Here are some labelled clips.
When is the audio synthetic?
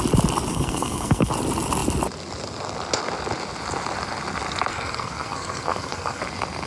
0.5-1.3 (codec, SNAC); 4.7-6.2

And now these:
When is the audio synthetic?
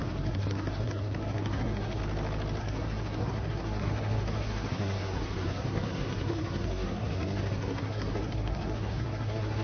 0.0-2.0 (codec, SNAC); 2.6-9.6